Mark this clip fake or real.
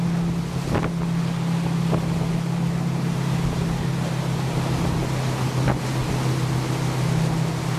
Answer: real